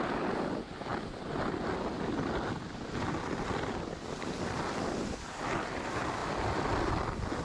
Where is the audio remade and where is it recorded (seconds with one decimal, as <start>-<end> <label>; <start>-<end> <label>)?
0.0-7.4 recorded